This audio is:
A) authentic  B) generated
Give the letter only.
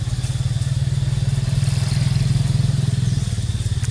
A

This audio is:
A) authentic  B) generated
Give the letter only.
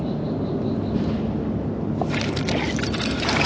A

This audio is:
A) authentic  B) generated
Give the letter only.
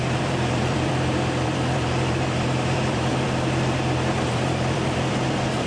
B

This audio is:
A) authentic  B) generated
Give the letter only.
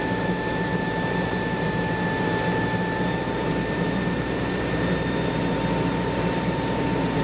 B